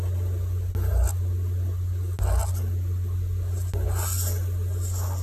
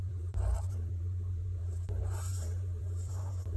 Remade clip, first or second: second